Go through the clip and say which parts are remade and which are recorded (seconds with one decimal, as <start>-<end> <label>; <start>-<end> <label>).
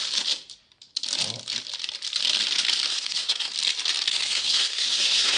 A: 0.0-2.9 recorded; 2.9-3.5 remade; 3.5-4.1 recorded; 4.1-5.4 remade